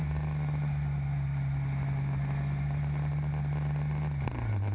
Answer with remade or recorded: recorded